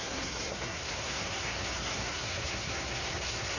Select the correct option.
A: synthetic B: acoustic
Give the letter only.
A